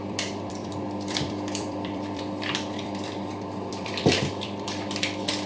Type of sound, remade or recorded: remade